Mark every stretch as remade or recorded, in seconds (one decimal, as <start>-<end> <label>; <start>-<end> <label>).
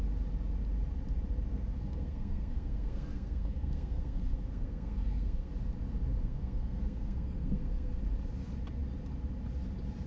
0.0-1.5 recorded; 1.5-5.5 remade; 5.5-6.2 recorded; 6.2-8.0 remade; 8.0-10.1 recorded